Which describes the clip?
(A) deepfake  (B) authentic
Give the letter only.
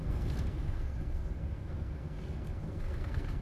A